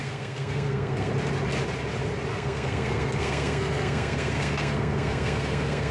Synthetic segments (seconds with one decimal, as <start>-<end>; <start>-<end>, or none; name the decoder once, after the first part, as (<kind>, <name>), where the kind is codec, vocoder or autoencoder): 0.0-1.1 (codec, SNAC); 2.3-5.9